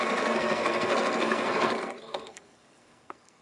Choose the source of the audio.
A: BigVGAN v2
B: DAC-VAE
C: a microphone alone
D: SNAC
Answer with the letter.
D